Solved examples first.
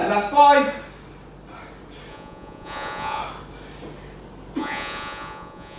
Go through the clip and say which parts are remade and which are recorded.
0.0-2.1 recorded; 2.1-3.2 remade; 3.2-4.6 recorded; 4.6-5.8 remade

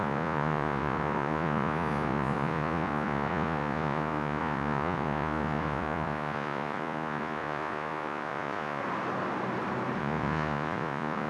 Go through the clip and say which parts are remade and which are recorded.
0.0-8.8 remade; 8.8-10.0 recorded; 10.0-11.3 remade

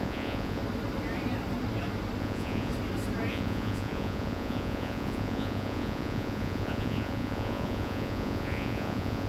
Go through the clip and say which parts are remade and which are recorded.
0.0-0.6 remade; 0.6-2.2 recorded; 2.2-2.7 remade; 2.7-3.3 recorded; 3.3-9.3 remade

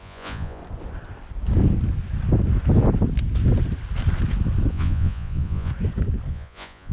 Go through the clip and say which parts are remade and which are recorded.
0.0-0.6 remade; 0.6-4.7 recorded; 4.7-5.7 remade; 5.7-6.3 recorded; 6.3-6.9 remade